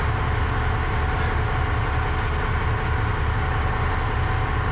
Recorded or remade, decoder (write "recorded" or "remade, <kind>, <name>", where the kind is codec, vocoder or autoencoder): recorded